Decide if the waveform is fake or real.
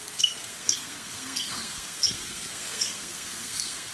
fake